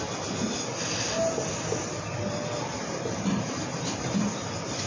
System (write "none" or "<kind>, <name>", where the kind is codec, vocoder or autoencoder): none